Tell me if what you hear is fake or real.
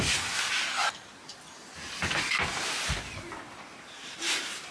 real